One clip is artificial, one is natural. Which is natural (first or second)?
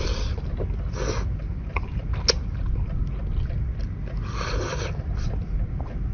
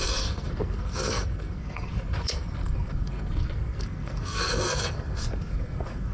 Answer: first